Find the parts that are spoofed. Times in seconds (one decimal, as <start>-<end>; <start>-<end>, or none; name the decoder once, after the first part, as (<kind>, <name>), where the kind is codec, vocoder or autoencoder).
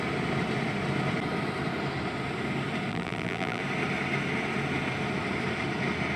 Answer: 2.9-3.6 (vocoder, BigVGAN v2)